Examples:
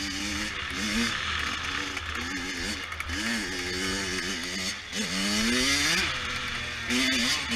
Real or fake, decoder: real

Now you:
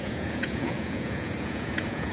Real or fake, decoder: fake, vocoder, Vocos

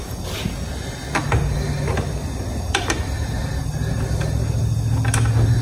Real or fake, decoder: real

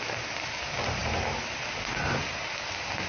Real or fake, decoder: real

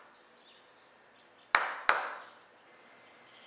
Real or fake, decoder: real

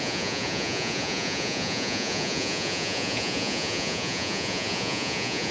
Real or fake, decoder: fake, vocoder, Vocos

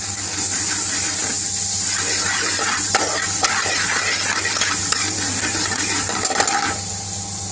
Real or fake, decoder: real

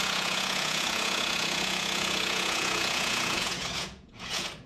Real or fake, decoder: fake, vocoder, Vocos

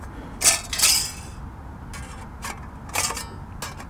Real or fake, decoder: real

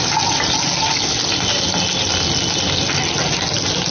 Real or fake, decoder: real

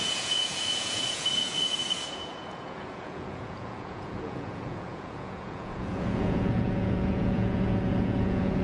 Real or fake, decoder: fake, vocoder, Vocos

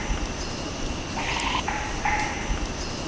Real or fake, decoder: real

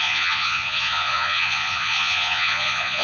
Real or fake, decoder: fake, vocoder, Vocos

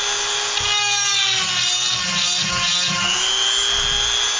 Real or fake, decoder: real